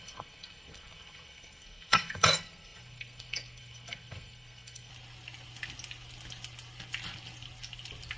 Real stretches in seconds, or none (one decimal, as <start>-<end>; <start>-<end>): 4.9-8.2